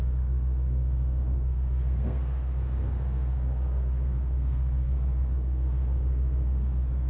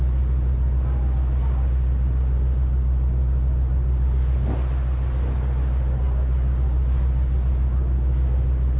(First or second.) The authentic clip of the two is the second